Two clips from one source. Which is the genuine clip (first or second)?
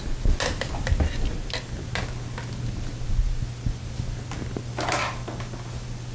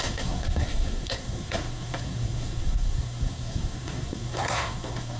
first